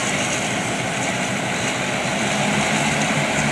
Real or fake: fake